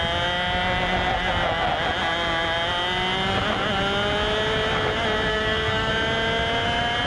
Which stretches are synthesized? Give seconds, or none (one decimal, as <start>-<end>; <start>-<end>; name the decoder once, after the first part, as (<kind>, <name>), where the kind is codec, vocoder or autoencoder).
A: 5.3-5.9 (codec, SNAC)

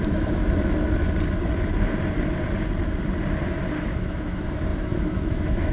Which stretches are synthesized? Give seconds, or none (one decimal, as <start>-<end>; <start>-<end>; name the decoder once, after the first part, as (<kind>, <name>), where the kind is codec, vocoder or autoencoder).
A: 0.0-0.4 (autoencoder, DAC-VAE); 3.8-5.7

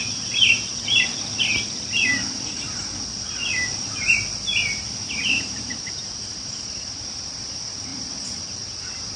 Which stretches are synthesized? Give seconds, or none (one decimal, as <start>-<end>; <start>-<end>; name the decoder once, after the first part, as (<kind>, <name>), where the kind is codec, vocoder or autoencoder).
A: 3.7-7.2 (vocoder, BigVGAN v2); 7.9-8.7

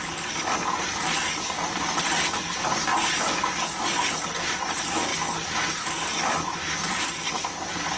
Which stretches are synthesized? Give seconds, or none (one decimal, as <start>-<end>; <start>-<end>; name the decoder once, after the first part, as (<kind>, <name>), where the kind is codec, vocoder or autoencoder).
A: none